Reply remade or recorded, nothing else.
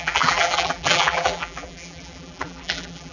remade